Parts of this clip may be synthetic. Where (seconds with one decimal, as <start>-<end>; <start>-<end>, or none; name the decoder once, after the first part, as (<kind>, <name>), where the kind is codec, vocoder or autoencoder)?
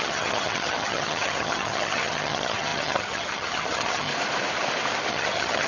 0.0-4.1 (vocoder, HiFi-GAN); 5.1-5.7